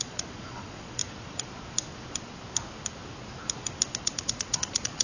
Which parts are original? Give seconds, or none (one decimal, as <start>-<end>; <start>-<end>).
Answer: 1.0-4.0